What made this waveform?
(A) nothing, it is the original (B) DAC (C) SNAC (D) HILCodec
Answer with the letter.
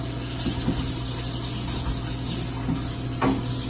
A